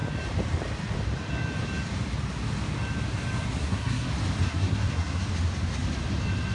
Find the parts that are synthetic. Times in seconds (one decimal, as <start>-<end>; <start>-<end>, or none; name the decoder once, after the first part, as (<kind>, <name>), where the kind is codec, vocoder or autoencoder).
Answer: 3.6-4.1 (codec, SNAC); 4.5-5.2